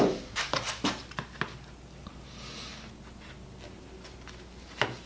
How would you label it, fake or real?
real